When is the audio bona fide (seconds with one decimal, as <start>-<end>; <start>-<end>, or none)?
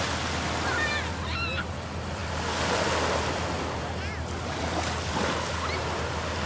0.0-6.5